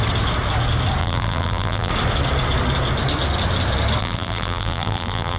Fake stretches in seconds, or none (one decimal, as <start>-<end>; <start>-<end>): 1.0-1.9; 4.0-5.4